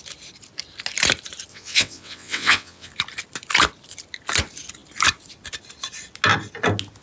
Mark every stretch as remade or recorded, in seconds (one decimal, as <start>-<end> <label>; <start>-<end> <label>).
0.0-1.5 recorded; 1.5-2.9 remade; 2.9-7.0 recorded